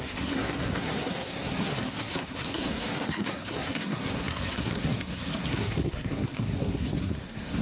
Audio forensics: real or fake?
fake